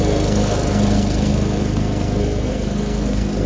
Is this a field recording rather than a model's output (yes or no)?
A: no